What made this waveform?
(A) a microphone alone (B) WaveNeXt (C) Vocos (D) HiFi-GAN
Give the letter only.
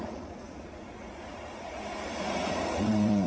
C